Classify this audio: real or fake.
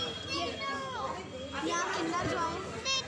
real